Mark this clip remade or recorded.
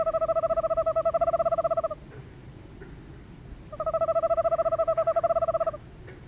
recorded